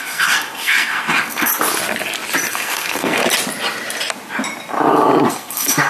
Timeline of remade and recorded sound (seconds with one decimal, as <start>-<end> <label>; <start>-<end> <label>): 0.0-1.5 remade; 1.5-2.5 recorded; 2.5-3.2 remade; 3.2-5.3 recorded; 5.3-5.9 remade